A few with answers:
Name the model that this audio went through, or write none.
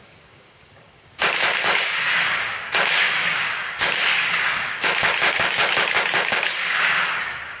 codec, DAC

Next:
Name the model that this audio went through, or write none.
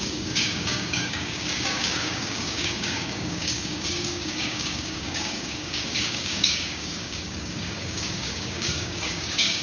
codec, DAC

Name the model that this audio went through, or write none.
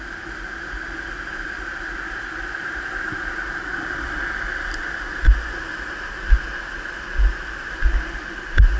none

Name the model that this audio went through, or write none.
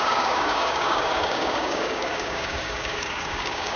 codec, DAC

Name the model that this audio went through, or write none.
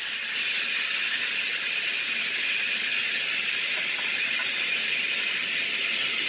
none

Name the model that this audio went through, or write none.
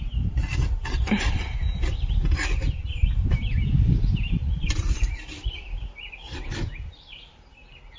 none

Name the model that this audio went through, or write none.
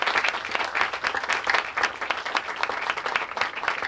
none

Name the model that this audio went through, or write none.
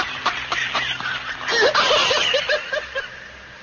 none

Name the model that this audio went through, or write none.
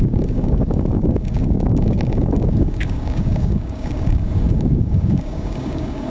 codec, DAC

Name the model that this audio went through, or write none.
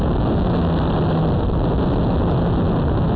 none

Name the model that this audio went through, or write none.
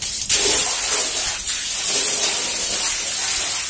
none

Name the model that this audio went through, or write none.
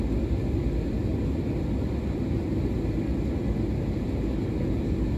none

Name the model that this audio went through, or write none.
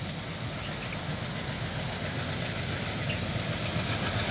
none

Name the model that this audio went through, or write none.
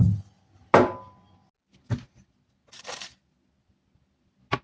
none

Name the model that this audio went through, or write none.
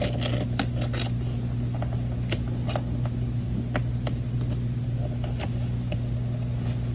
none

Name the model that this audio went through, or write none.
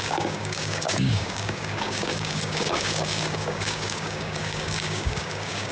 codec, DAC